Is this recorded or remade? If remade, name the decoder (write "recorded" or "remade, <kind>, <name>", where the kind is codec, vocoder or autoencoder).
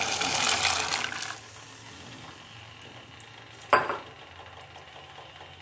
recorded